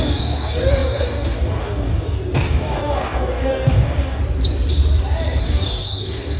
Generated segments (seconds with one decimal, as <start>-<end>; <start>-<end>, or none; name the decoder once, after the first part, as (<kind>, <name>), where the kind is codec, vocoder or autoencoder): 0.0-4.2 (codec, DAC); 5.4-6.4